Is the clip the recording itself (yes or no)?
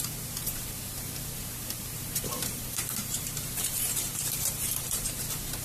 no